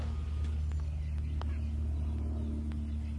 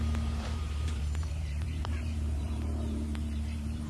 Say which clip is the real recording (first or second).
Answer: first